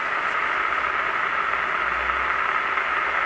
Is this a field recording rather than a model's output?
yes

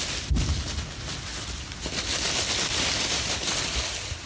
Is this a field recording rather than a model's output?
yes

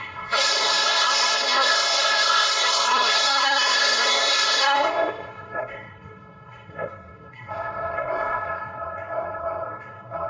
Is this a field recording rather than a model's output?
no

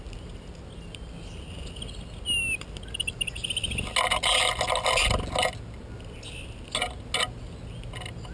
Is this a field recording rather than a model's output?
yes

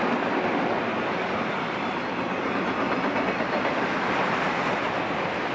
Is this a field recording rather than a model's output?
yes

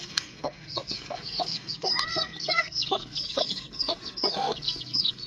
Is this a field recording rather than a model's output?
no